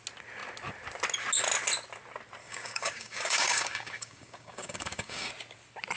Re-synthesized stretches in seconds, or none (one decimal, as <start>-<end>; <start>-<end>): 2.4-5.3